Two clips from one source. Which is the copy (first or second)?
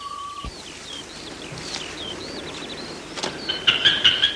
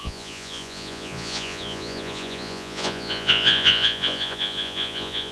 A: second